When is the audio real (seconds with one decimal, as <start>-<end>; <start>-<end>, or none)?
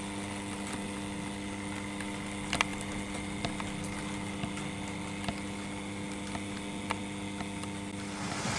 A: 0.0-8.6